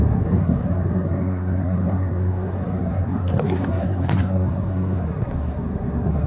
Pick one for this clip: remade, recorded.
remade